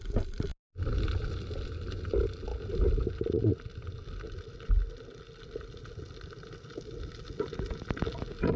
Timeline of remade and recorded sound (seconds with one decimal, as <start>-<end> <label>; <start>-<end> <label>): 0.0-8.6 recorded